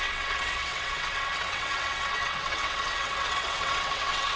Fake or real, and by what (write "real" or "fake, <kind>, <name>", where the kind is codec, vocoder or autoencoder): fake, vocoder, WaveNeXt